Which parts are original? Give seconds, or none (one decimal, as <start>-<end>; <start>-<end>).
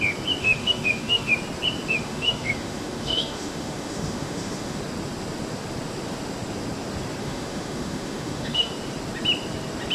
0.0-0.4; 1.3-1.9; 4.8-7.2; 8.7-9.9